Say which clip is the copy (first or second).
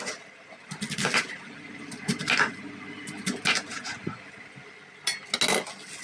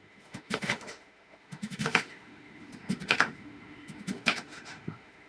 second